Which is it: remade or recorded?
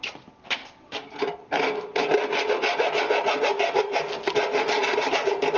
recorded